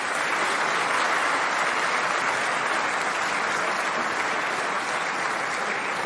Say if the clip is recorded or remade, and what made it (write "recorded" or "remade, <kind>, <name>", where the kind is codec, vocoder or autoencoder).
recorded